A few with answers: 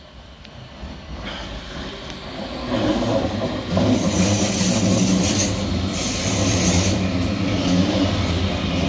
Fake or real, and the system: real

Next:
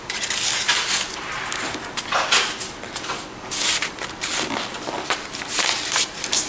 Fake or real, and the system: real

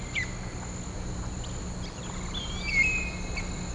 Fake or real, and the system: real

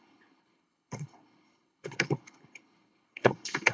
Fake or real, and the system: fake, codec, HILCodec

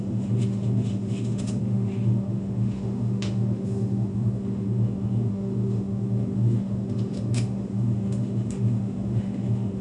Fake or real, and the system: fake, autoencoder, DAC-VAE